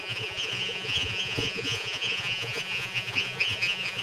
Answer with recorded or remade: remade